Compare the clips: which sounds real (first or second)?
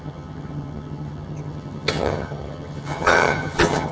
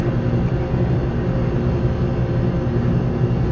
second